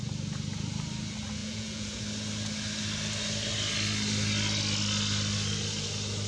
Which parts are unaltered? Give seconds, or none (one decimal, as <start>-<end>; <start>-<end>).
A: 0.0-1.4; 2.0-6.3